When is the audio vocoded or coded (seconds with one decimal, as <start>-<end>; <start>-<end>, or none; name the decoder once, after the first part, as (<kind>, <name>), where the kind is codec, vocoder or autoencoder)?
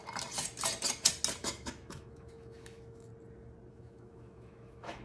1.4-3.1 (autoencoder, DAC-VAE); 3.7-5.0